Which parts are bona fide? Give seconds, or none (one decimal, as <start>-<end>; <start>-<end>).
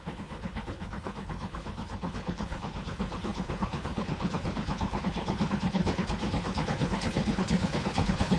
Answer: none